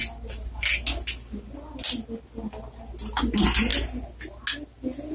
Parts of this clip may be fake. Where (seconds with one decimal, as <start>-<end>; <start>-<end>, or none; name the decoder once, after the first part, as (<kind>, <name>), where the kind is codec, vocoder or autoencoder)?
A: none